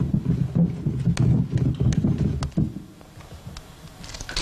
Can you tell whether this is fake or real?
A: real